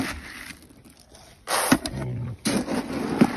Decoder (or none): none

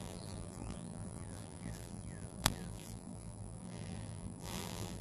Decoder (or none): vocoder, BigVGAN v2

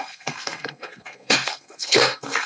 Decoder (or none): codec, SNAC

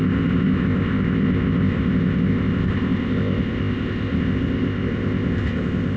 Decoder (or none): codec, ZipCodec